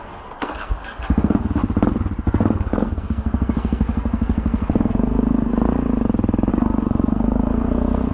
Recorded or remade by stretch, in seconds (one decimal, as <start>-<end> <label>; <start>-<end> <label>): 0.0-1.6 remade; 1.6-2.2 recorded; 2.2-5.5 remade; 5.5-6.5 recorded; 6.5-8.1 remade